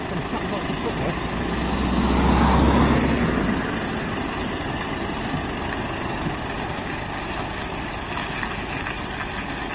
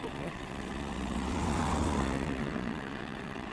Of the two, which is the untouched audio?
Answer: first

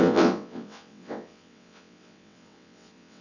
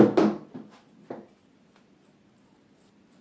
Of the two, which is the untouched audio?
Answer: second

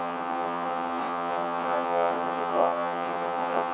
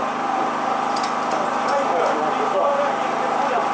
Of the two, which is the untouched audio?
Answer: second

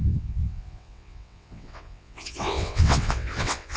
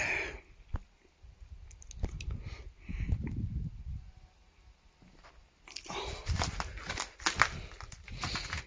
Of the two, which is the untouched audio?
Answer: second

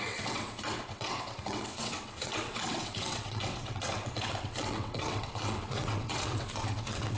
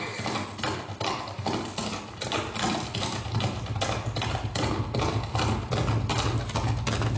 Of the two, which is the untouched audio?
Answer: second